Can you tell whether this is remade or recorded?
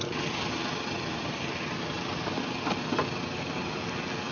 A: recorded